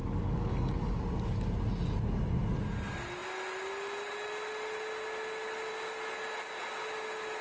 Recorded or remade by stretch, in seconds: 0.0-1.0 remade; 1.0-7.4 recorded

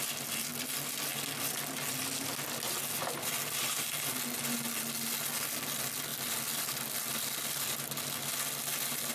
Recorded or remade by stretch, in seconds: 0.0-9.1 recorded

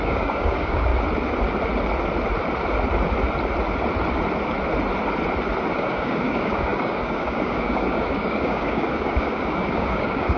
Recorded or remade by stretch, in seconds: 0.0-0.9 remade; 0.9-5.7 recorded; 5.7-10.4 remade

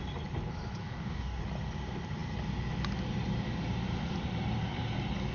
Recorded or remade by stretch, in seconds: 0.0-0.8 recorded; 0.8-1.4 remade; 1.4-5.3 recorded

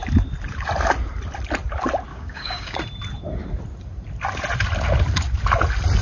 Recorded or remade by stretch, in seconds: 0.0-2.1 recorded; 2.1-2.8 remade; 2.8-6.0 recorded